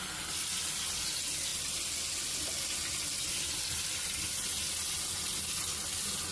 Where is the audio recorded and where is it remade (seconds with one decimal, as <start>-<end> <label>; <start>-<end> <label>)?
0.0-6.3 recorded